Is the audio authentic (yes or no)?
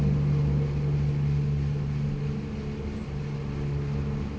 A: yes